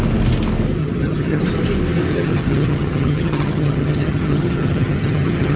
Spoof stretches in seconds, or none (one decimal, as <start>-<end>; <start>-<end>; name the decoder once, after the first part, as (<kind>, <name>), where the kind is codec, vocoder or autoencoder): 0.8-1.4 (vocoder, HiFi-GAN); 2.1-5.6